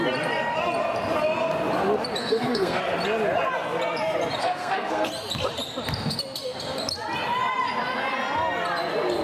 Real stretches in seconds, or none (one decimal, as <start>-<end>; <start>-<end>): 0.0-2.2; 2.8-4.4; 5.1-9.2